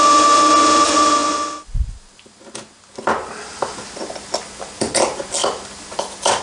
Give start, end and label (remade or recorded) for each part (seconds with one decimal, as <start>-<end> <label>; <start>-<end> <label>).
0.0-6.4 recorded